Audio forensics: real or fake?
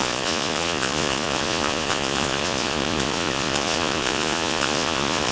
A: fake